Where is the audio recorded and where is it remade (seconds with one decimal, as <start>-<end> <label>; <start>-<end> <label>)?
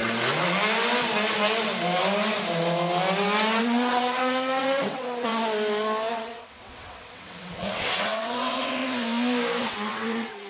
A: 0.0-3.6 recorded; 3.6-5.3 remade; 5.3-6.1 recorded; 6.1-8.8 remade; 8.8-9.6 recorded; 9.6-10.5 remade